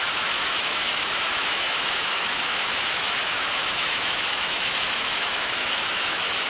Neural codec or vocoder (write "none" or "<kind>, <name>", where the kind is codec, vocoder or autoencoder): autoencoder, DAC-VAE